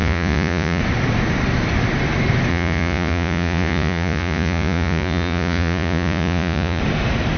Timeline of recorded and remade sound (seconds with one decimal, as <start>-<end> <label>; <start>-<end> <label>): 0.0-0.8 remade; 0.8-2.5 recorded; 2.5-6.8 remade; 6.8-7.4 recorded